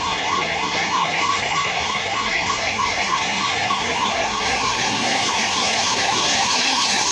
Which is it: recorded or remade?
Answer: remade